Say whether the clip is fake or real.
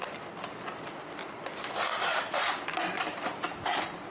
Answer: real